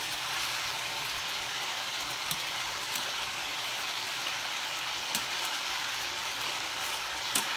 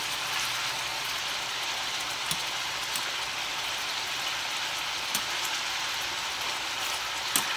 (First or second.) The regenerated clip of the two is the first